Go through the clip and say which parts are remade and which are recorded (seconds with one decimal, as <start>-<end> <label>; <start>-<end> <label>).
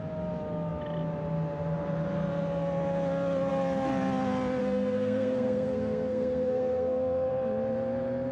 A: 0.0-4.6 recorded; 4.6-7.3 remade; 7.3-8.3 recorded